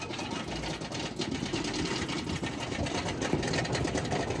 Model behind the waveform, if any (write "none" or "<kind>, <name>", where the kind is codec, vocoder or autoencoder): none